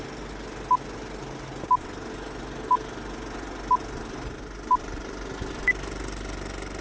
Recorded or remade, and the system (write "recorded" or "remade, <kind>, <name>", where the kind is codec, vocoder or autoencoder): recorded